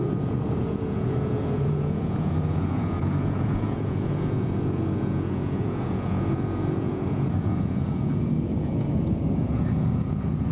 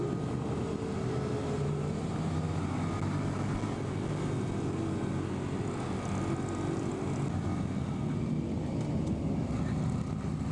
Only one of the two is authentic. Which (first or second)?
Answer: second